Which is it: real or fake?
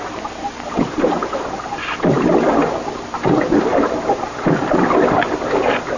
real